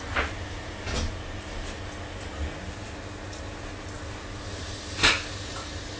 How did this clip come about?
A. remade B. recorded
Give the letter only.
B